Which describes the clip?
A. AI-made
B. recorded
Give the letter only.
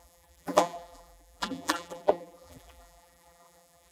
A